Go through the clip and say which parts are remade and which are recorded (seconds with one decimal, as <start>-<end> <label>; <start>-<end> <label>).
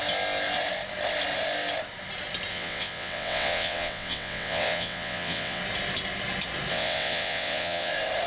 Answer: 0.0-2.5 recorded; 2.5-5.6 remade; 5.6-6.7 recorded; 6.7-7.9 remade; 7.9-8.3 recorded